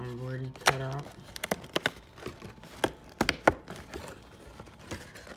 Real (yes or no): yes